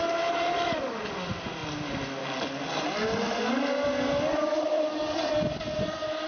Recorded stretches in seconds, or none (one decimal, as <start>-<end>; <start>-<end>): 0.0-6.3